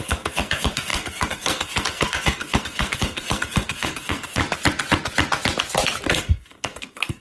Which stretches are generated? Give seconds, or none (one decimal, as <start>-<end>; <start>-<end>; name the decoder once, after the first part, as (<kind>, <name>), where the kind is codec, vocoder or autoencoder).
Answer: 0.0-4.4 (codec, SNAC); 6.1-7.2